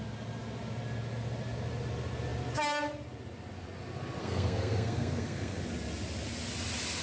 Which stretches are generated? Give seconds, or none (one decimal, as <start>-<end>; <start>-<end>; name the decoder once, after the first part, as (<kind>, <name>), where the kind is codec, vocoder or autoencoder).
4.2-5.6 (codec, SNAC)